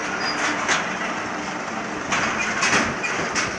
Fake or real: real